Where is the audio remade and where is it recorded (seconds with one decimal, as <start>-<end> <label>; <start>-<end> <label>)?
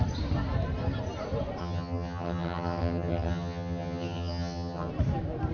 0.0-1.6 recorded; 1.6-4.9 remade; 4.9-5.5 recorded